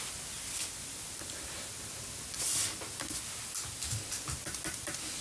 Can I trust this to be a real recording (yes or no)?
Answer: yes